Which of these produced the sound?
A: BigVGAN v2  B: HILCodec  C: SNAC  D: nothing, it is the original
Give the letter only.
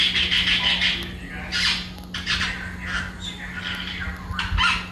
D